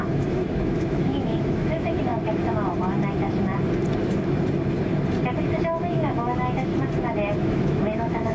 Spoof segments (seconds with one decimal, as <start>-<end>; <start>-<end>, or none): 0.0-2.1; 5.8-6.7; 7.4-8.3

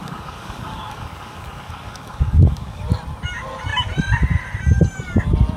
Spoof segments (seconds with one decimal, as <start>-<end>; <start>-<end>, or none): 0.0-2.8

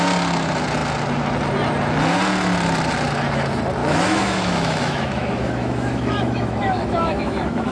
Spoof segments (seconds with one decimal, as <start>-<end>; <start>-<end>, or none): 3.8-7.7

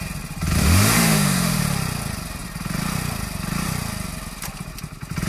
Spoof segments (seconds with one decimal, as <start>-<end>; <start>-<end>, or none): 0.6-1.6